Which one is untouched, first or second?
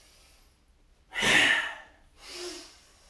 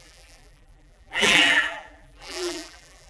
first